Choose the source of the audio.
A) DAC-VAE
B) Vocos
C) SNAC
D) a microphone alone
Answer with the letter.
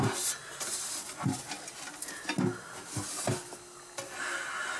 D